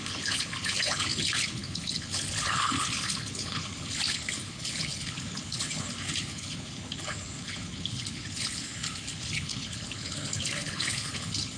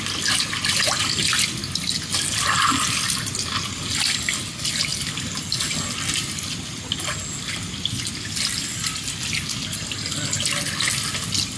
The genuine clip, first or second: second